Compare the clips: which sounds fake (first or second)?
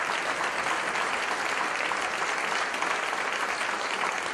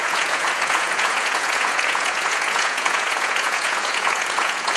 second